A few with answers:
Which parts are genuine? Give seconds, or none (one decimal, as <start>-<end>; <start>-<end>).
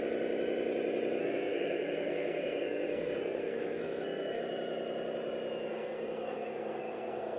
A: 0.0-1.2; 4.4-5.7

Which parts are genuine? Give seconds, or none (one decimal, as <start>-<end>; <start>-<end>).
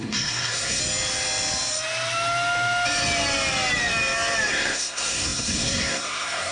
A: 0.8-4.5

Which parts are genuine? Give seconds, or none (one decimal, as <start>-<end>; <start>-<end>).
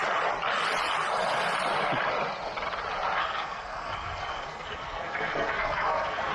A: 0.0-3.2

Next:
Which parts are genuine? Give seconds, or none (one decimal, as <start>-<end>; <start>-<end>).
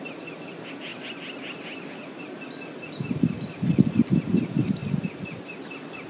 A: 0.0-6.1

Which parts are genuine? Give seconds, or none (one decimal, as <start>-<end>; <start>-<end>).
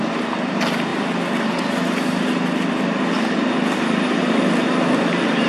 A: 0.0-5.5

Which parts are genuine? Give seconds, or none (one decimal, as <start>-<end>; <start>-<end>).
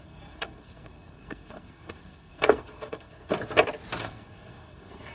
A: 3.3-4.0